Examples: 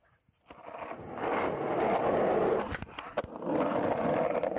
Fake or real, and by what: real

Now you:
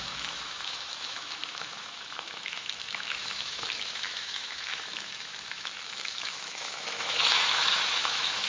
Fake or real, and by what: fake, autoencoder, DAC-VAE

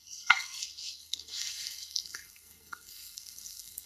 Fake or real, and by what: fake, codec, SNAC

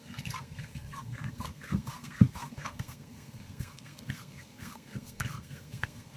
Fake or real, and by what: fake, codec, SNAC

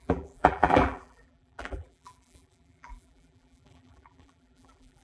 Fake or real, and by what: fake, vocoder, BigVGAN v2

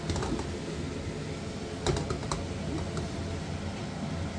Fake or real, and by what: real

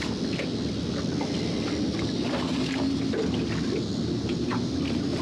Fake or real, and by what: real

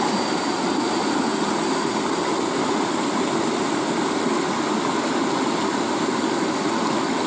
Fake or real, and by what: real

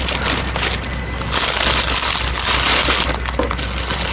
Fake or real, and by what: real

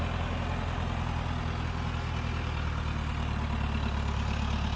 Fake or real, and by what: real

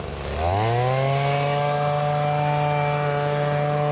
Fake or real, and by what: real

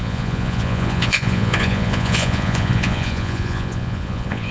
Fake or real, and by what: fake, vocoder, Vocos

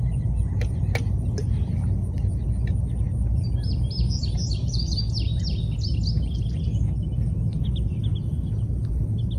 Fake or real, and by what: real